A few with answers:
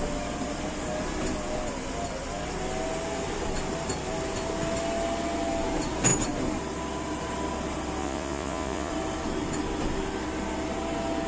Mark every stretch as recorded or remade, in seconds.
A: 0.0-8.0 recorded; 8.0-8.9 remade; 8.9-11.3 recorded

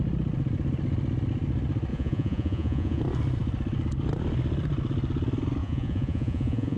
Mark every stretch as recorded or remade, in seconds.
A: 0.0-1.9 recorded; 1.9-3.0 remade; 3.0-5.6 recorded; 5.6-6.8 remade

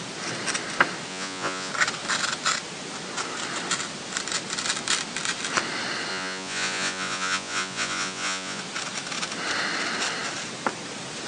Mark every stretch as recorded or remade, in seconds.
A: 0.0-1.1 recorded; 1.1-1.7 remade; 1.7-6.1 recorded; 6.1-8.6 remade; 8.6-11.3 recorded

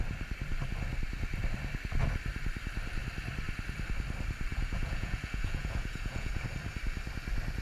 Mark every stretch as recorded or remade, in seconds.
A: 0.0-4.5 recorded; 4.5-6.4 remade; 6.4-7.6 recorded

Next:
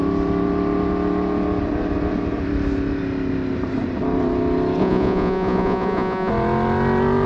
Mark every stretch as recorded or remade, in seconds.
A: 0.0-4.8 recorded; 4.8-6.3 remade; 6.3-7.3 recorded